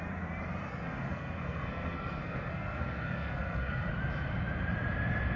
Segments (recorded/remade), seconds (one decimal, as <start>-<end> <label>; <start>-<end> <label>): 0.0-0.7 recorded; 0.7-3.9 remade; 3.9-5.4 recorded